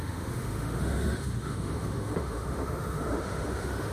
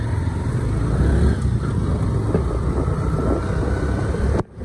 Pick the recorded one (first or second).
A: second